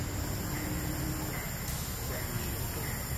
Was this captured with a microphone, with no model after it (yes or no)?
yes